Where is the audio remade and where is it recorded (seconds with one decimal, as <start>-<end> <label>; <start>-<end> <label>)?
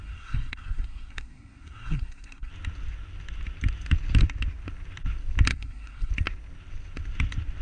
0.0-2.5 remade; 2.5-5.5 recorded; 5.5-6.1 remade; 6.1-7.6 recorded